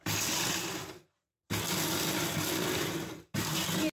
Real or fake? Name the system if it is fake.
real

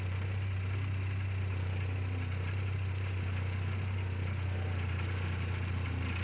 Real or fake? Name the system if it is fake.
real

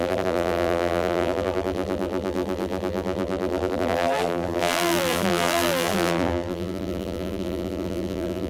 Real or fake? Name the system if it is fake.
fake, vocoder, BigVGAN v2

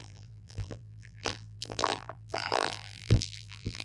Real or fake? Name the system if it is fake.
fake, vocoder, BigVGAN v2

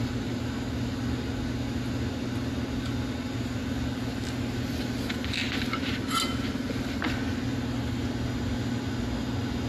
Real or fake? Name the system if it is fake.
real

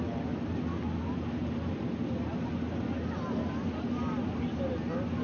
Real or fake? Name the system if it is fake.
real